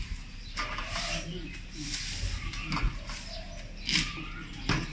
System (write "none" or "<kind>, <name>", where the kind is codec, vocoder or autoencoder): vocoder, BigVGAN v2